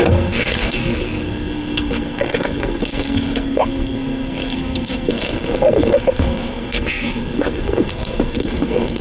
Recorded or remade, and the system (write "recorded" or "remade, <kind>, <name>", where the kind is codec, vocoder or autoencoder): remade, codec, SNAC